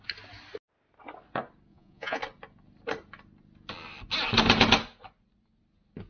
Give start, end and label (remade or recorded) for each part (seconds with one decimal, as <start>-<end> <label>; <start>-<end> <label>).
0.0-1.7 recorded; 1.7-2.2 remade; 2.2-6.1 recorded